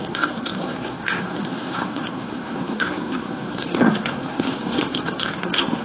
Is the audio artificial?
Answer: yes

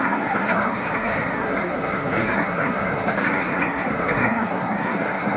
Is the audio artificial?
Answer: yes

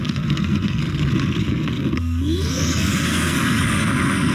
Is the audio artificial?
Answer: yes